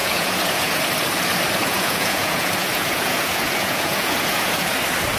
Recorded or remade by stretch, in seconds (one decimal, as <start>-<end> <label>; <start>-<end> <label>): 0.0-0.8 remade; 0.8-1.6 recorded; 1.6-4.7 remade; 4.7-5.2 recorded